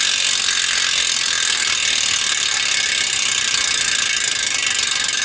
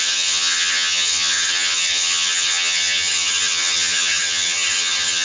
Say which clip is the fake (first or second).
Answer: second